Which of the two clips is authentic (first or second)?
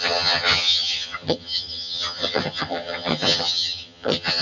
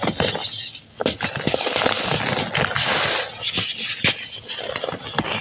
second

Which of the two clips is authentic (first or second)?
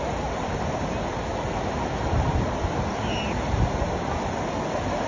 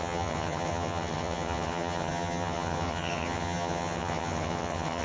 first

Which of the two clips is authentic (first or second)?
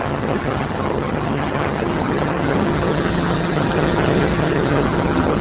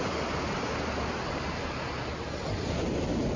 second